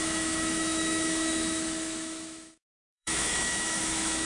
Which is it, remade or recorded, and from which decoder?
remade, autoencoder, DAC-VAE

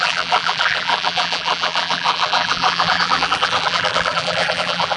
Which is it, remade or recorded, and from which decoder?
remade, vocoder, BigVGAN v2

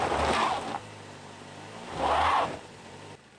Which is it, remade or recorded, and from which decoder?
recorded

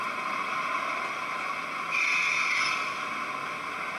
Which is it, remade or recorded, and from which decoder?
recorded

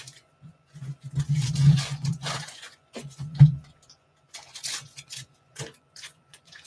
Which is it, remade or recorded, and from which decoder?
remade, vocoder, Vocos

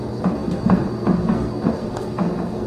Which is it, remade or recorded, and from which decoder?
remade, codec, SNAC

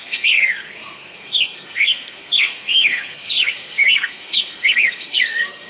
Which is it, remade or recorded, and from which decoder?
remade, codec, SNAC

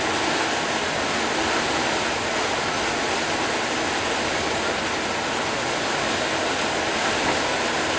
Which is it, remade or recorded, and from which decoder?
recorded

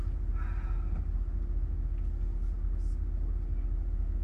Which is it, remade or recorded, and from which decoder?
recorded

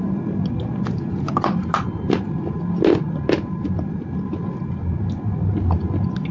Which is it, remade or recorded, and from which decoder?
recorded